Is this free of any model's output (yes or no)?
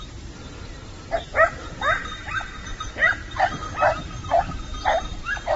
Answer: no